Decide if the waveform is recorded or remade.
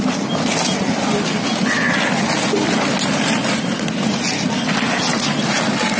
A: recorded